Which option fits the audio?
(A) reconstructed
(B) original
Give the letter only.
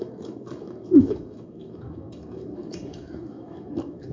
A